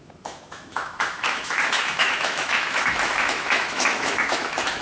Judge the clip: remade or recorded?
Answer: remade